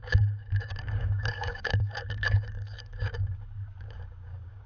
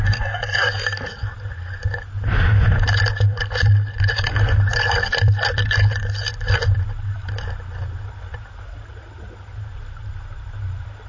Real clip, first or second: second